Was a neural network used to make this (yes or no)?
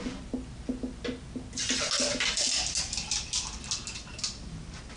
no